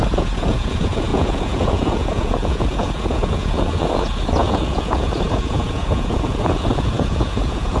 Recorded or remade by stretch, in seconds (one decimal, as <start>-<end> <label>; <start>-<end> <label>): 0.0-7.8 remade